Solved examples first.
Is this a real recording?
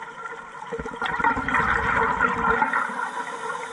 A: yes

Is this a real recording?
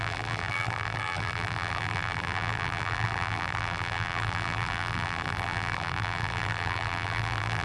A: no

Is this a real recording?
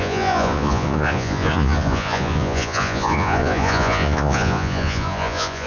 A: no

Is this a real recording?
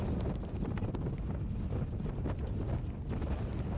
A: yes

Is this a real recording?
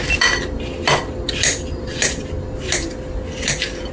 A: yes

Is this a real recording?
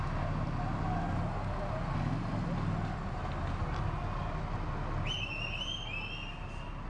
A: yes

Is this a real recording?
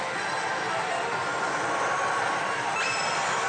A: yes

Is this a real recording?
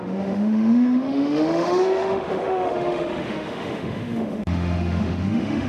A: no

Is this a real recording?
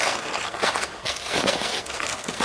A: no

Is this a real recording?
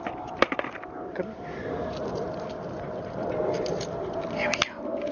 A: no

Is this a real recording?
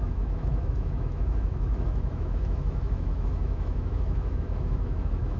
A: no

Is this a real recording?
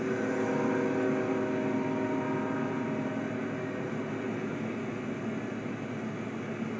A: yes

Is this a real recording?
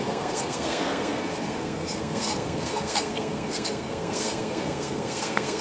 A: no